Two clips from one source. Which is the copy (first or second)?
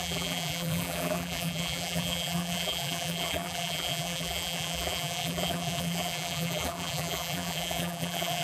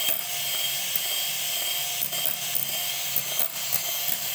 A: first